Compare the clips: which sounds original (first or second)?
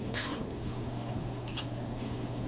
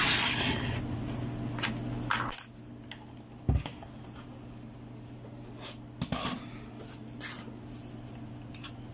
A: second